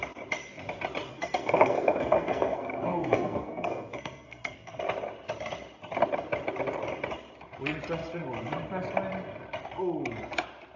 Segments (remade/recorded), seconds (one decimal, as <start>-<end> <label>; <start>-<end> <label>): 0.0-1.1 recorded; 1.1-4.8 remade; 4.8-10.8 recorded